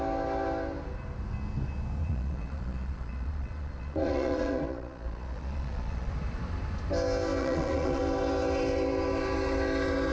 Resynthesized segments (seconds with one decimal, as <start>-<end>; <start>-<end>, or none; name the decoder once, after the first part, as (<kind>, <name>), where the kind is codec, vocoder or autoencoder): 2.0-6.1 (vocoder, Vocos); 7.4-8.0